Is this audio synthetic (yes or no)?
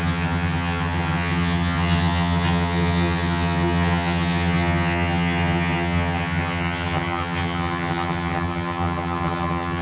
yes